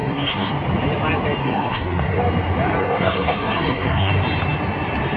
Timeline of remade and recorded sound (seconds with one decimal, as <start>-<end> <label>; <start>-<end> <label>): 0.0-0.5 remade; 0.5-1.4 recorded; 1.4-2.2 remade; 2.2-2.8 recorded; 2.8-4.1 remade; 4.1-5.2 recorded